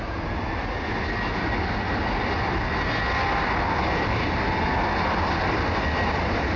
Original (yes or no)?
yes